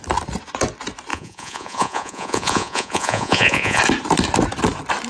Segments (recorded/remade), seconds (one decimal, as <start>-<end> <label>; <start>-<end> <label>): 0.0-1.1 recorded; 1.1-3.8 remade; 3.8-5.1 recorded